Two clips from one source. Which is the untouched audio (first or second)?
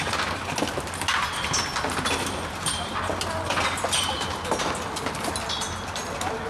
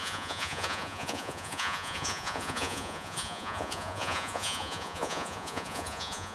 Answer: first